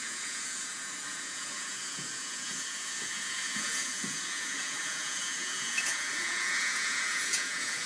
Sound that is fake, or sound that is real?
fake